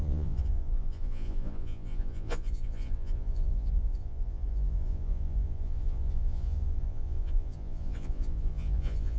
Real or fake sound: fake